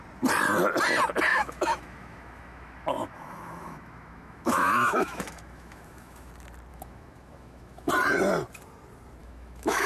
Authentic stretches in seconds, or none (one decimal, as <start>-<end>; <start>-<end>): 0.0-1.3; 6.3-6.7; 7.9-9.2